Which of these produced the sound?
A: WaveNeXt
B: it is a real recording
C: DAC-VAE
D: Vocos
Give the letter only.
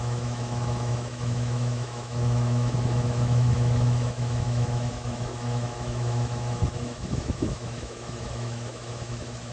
C